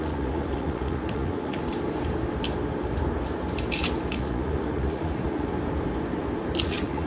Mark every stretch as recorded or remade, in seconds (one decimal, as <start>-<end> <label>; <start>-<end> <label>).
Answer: 0.0-1.6 remade; 1.6-4.1 recorded; 4.1-5.5 remade; 5.5-6.6 recorded; 6.6-7.1 remade